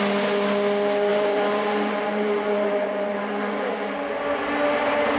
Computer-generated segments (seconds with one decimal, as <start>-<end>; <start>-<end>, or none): 1.1-4.2